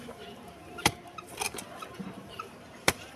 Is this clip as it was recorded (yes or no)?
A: no